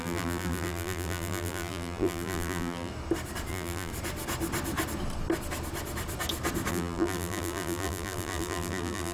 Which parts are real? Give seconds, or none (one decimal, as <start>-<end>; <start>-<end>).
2.9-3.5; 3.9-6.7